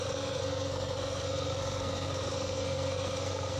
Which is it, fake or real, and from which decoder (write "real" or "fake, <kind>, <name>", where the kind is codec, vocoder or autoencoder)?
fake, codec, SNAC